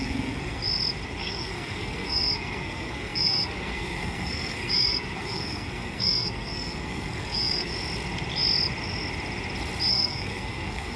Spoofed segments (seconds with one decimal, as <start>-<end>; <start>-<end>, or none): 0.0-0.6; 1.3-7.7; 9.9-11.0